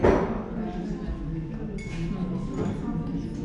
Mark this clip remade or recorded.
recorded